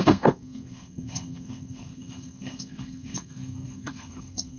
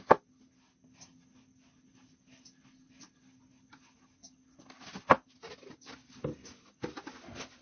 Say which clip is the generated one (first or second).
first